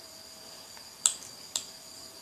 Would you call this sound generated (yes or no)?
yes